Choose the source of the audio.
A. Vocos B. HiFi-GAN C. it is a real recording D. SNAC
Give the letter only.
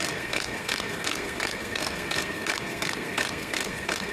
D